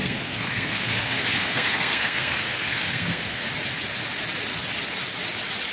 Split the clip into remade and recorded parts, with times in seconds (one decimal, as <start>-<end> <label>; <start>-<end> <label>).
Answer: 0.0-3.4 remade; 3.4-5.7 recorded